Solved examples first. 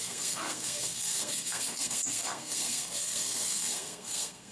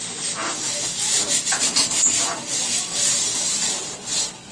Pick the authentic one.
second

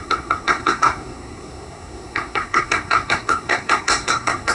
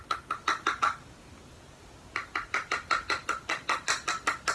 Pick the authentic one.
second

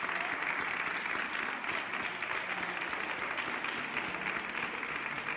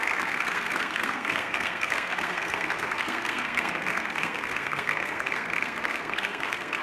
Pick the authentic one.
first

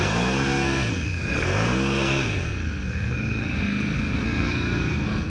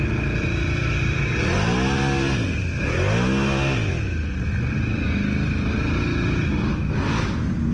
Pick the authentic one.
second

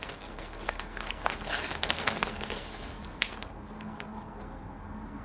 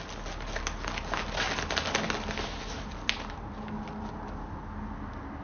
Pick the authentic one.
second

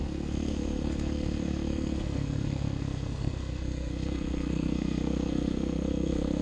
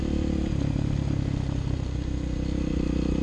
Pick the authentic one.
second